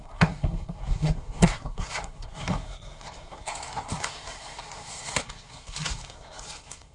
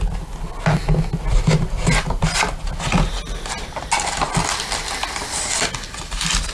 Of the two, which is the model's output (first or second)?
first